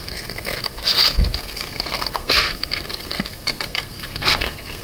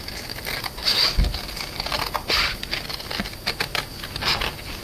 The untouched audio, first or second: second